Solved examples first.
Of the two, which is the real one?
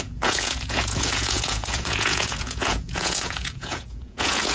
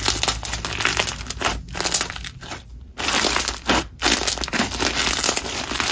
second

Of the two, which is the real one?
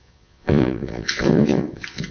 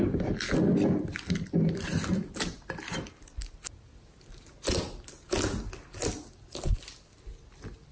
second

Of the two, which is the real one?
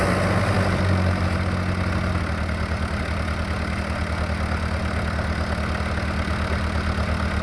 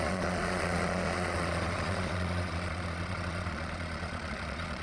first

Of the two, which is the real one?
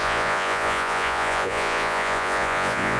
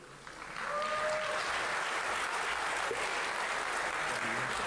second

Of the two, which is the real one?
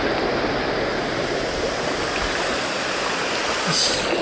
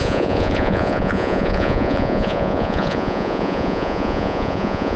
first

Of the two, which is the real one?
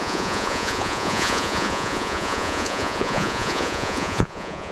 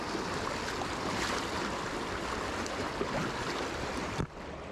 second